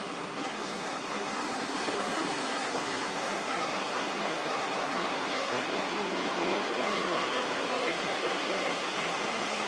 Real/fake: fake